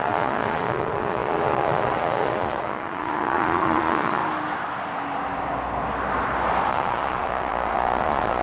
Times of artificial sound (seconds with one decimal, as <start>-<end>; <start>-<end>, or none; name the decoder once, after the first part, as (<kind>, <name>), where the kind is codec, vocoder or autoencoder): 0.0-4.2 (vocoder, Vocos); 6.7-8.4